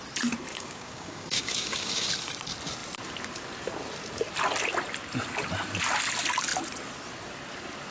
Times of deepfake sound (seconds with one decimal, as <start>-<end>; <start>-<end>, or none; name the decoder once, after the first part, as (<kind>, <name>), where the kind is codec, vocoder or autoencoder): 0.5-2.1 (codec, DAC)